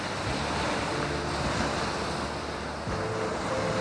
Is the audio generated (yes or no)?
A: no